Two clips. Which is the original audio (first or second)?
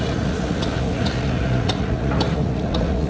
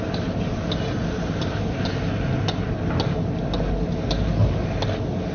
second